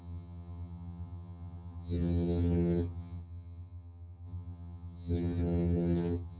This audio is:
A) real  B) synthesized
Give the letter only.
B